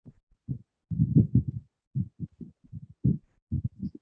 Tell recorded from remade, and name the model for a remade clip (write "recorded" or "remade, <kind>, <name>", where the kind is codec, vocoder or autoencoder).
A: recorded